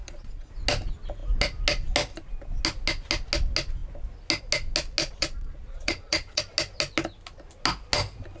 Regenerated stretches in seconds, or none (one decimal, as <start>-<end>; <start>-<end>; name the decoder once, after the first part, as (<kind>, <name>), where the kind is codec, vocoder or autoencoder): 0.0-0.5 (vocoder, Vocos); 5.0-6.4